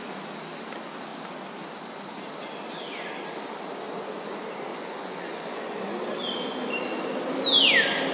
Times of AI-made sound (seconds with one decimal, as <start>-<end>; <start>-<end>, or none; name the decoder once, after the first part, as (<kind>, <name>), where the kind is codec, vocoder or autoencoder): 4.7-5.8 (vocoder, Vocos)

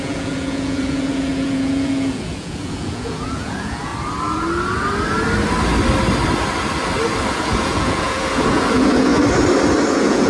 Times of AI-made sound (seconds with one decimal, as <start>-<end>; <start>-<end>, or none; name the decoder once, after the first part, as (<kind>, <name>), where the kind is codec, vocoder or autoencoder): 0.0-3.9 (vocoder, Vocos); 7.3-9.1; 9.9-10.3

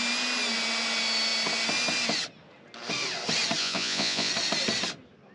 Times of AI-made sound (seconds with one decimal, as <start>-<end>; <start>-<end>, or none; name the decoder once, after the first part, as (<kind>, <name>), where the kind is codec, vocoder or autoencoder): 3.6-4.3 (vocoder, Vocos)

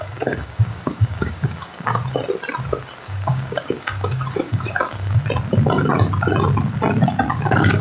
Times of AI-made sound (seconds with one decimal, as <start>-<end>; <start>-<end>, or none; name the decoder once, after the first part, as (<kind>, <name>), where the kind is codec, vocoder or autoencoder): 0.0-2.0 (codec, DAC); 3.0-5.2; 7.3-7.8

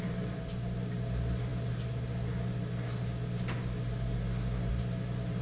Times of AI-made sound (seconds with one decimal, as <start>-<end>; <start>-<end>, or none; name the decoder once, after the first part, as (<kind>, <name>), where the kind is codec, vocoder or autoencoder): none